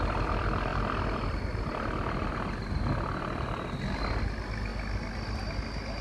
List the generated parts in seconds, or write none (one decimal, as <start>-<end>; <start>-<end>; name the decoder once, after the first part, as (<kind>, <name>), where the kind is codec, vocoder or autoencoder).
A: none